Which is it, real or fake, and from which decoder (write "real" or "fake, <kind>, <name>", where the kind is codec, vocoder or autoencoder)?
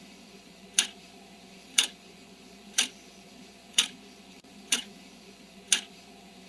fake, vocoder, Vocos